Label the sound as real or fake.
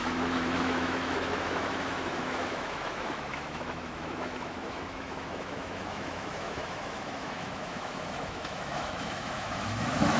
fake